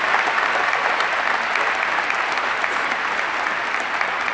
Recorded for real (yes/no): yes